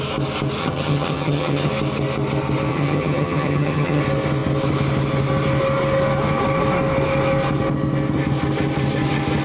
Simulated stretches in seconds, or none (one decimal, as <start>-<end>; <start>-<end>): 0.6-1.7; 2.7-4.0